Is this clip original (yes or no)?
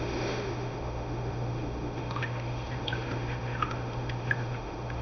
no